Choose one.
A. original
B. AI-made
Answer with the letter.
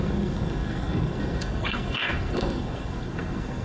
B